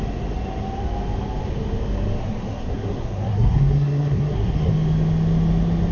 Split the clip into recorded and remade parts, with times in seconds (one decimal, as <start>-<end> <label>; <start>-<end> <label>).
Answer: 0.0-2.2 recorded; 2.2-4.7 remade; 4.7-5.9 recorded